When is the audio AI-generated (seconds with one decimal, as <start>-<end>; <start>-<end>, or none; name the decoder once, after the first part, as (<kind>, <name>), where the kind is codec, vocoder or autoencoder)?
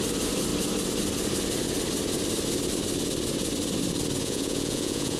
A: 4.2-5.2 (vocoder, Vocos)